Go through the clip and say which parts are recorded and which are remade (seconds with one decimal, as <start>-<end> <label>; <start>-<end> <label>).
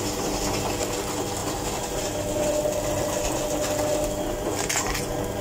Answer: 0.0-5.4 recorded